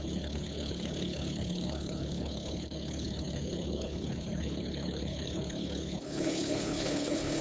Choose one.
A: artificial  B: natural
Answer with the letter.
A